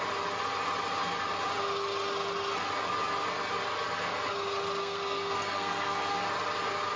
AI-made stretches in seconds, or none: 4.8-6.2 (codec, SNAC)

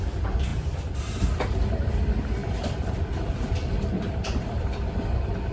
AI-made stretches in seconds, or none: 0.0-0.5 (vocoder, BigVGAN v2); 1.2-5.5